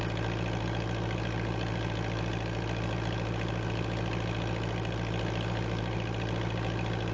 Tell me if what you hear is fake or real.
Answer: real